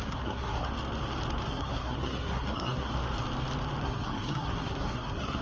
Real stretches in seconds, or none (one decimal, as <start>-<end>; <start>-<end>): 0.7-1.5; 2.9-3.8